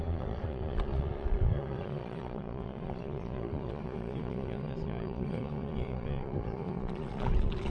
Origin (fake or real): fake